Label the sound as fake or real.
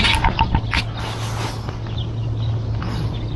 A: real